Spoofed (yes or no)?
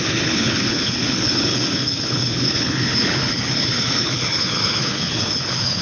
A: yes